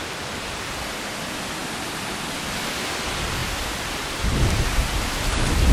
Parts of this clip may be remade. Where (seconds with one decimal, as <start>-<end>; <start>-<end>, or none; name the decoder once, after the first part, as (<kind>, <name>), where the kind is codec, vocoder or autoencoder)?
none